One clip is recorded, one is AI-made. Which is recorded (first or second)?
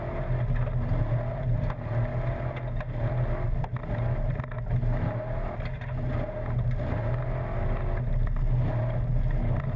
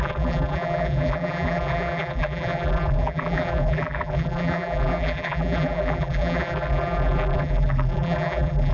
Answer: first